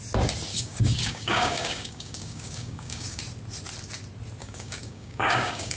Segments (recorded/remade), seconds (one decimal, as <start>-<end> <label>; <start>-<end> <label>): 0.0-0.5 recorded; 0.5-3.2 remade; 3.2-4.4 recorded; 4.4-5.8 remade